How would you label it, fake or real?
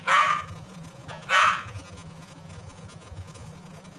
fake